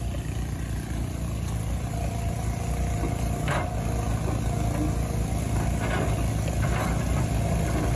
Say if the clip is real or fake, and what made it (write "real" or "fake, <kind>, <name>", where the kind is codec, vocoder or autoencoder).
real